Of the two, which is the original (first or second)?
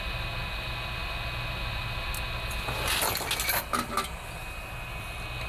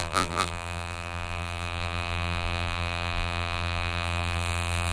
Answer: first